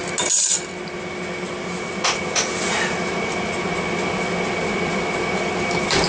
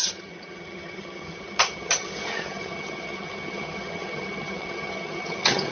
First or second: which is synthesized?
second